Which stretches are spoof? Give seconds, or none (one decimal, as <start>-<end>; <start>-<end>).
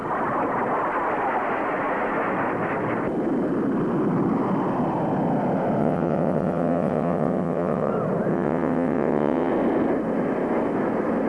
5.8-7.9; 8.3-9.5